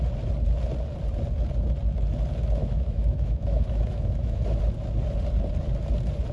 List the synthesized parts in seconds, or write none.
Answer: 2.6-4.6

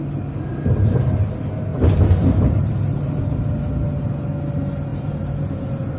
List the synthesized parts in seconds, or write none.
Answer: 1.7-3.2; 4.9-6.0

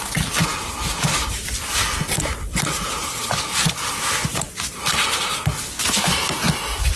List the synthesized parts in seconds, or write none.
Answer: none

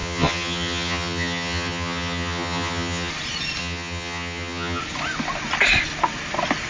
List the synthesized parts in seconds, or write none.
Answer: 0.0-3.1; 3.6-4.8